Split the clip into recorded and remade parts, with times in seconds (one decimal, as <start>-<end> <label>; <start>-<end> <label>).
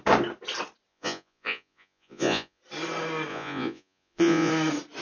0.0-0.9 recorded; 0.9-2.6 remade; 2.6-3.3 recorded; 3.3-4.5 remade; 4.5-5.0 recorded